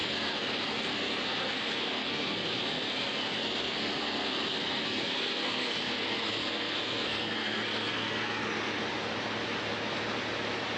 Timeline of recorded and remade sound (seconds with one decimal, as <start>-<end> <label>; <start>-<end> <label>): 0.0-8.4 remade; 8.4-10.8 recorded